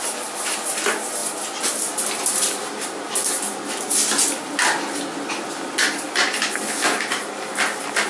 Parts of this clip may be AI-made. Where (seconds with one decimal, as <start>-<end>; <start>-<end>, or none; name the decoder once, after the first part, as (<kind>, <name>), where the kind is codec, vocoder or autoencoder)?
none